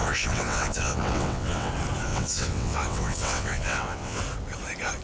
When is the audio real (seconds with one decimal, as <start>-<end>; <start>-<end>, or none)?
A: 1.7-2.1; 4.2-5.0